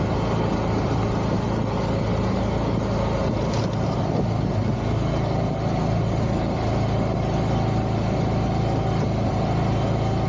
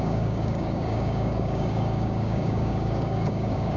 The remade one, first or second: second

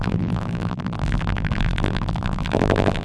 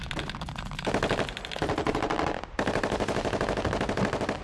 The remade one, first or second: first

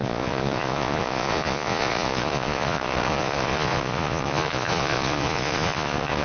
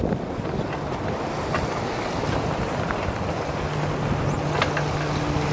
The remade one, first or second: first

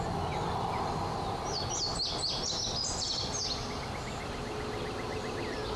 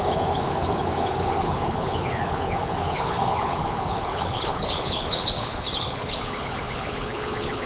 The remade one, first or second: second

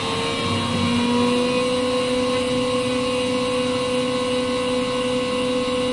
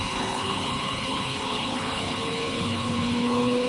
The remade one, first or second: second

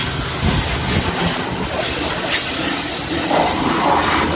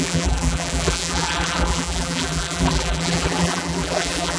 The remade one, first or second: second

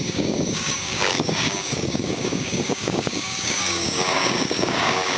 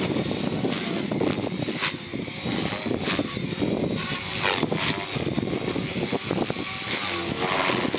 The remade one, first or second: first